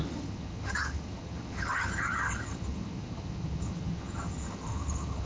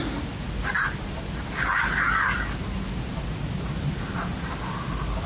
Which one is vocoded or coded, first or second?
first